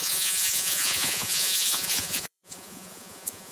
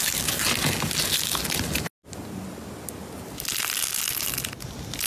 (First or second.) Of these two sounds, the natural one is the second